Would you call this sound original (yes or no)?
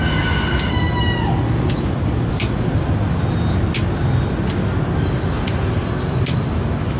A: yes